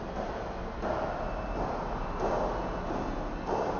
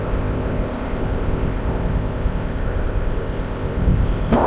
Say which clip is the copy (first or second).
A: second